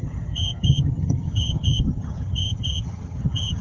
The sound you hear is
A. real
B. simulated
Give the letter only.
B